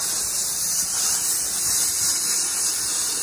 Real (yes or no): yes